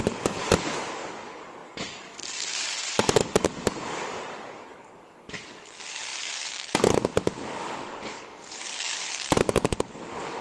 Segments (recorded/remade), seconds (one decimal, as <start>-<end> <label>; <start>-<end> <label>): 0.0-10.4 remade